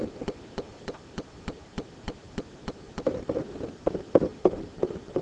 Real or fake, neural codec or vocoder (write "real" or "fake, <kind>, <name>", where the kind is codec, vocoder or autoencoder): fake, vocoder, BigVGAN v2